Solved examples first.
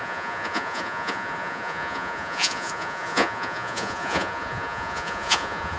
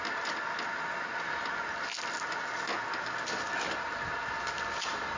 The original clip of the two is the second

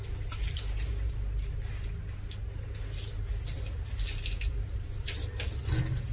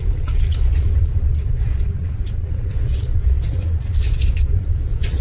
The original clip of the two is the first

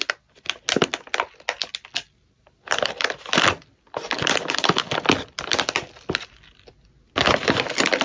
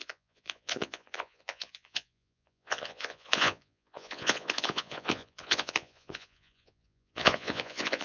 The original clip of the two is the first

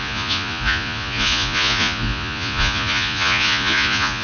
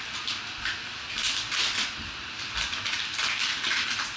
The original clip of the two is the second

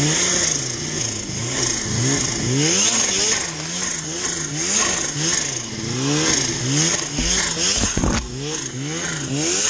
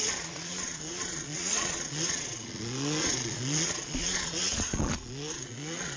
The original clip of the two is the first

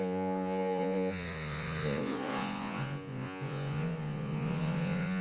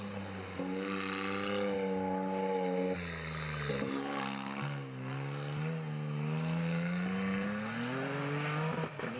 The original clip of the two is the second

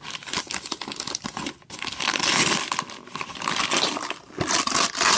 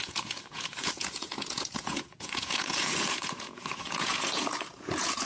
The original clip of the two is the first